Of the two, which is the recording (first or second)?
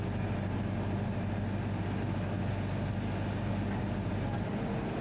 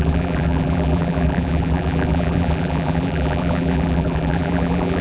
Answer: first